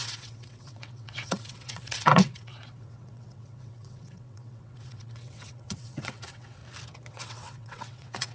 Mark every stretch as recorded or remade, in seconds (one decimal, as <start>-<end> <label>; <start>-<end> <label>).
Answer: 0.0-6.6 remade; 6.6-7.1 recorded; 7.1-8.3 remade